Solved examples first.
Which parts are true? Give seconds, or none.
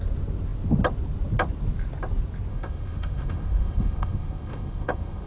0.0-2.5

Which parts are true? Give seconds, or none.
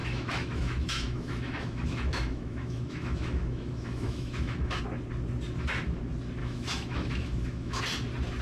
4.8-6.4; 7.8-8.4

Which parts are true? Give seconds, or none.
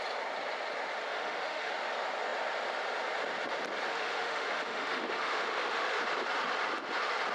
0.0-1.1; 1.7-3.9; 6.0-7.3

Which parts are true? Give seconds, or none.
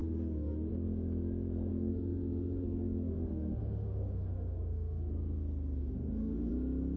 0.7-1.7; 5.1-5.8; 6.5-7.0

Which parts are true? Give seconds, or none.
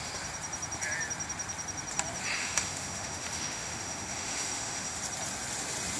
0.0-2.4; 5.0-6.0